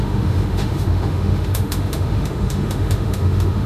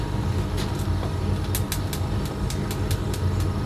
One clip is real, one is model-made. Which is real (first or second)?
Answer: second